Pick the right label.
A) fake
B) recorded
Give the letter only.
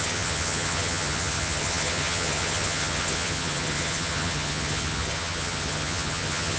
A